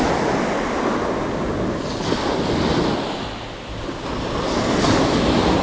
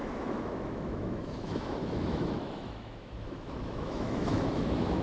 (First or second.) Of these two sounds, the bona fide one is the first